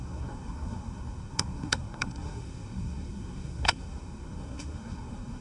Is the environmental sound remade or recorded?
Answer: remade